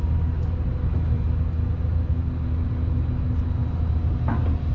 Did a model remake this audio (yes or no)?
no